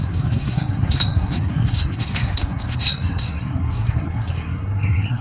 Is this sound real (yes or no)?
no